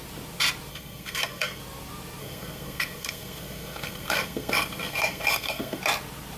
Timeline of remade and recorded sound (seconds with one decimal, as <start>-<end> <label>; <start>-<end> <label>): 0.0-0.7 recorded; 0.7-1.6 remade; 1.6-2.2 recorded; 2.2-5.8 remade; 5.8-6.4 recorded

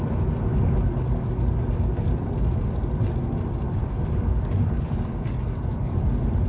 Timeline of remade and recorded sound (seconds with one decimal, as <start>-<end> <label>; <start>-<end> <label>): 0.0-0.5 recorded; 0.5-1.6 remade; 1.6-3.8 recorded; 3.8-6.0 remade; 6.0-6.5 recorded

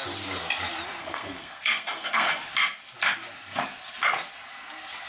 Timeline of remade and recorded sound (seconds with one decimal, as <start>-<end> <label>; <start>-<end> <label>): 0.0-1.0 recorded; 1.0-2.4 remade; 2.4-5.1 recorded

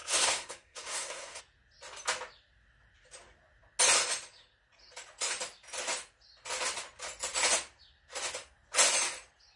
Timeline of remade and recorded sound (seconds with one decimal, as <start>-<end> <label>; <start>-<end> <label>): 0.0-1.4 remade; 1.4-9.6 recorded

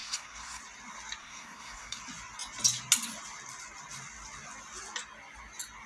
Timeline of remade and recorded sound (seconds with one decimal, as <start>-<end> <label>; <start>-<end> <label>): 0.0-0.6 remade; 0.6-1.2 recorded; 1.2-2.0 remade; 2.0-5.9 recorded